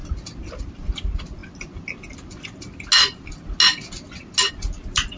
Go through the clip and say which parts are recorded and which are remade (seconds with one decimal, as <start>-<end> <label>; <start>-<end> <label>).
0.0-5.2 recorded